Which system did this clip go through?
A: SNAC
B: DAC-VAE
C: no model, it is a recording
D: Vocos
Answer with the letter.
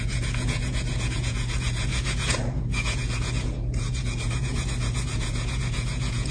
D